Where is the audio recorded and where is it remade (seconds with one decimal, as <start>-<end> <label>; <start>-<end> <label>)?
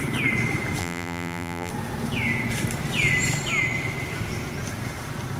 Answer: 0.0-0.8 recorded; 0.8-1.7 remade; 1.7-5.4 recorded